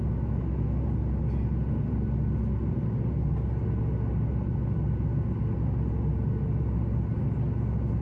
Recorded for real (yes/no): yes